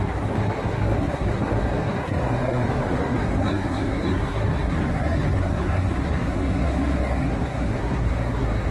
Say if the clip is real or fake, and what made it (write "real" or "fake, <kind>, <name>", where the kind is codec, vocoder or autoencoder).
fake, codec, SNAC